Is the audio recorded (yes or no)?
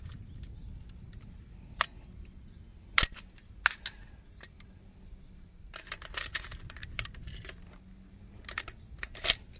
yes